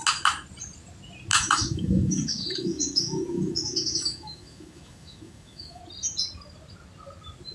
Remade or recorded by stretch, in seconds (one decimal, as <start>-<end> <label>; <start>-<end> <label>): 0.0-1.3 recorded; 1.3-5.8 remade; 5.8-7.5 recorded